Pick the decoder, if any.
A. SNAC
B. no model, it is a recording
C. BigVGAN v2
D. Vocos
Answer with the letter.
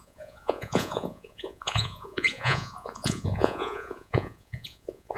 D